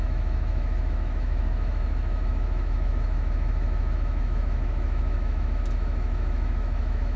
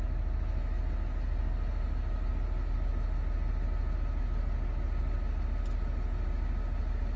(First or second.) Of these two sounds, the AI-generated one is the first